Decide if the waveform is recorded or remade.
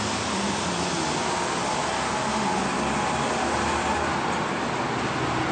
recorded